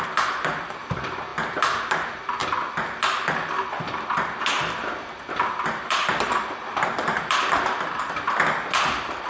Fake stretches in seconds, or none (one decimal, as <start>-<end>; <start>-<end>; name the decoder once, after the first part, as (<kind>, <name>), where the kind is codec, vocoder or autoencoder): 0.0-2.4 (vocoder, BigVGAN v2); 3.6-9.3